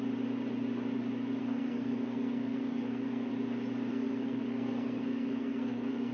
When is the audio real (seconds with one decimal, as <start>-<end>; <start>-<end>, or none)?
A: 0.0-1.4; 3.3-3.9